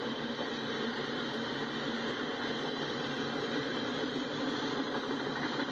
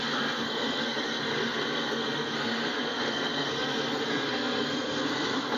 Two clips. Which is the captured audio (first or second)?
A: first